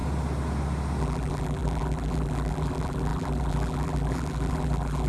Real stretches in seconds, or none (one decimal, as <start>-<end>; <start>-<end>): 0.0-1.0